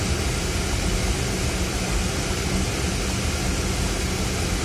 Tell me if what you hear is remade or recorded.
recorded